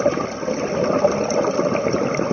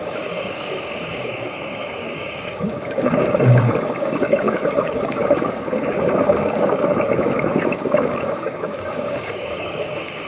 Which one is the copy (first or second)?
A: second